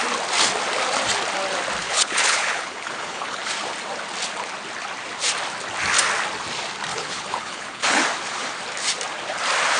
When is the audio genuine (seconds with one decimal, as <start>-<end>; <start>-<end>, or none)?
0.0-1.8; 3.4-6.9; 8.0-9.8